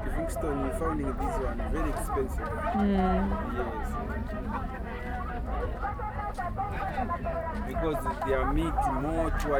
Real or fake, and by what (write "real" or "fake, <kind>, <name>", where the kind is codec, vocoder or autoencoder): real